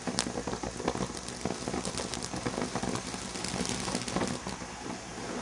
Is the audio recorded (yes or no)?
yes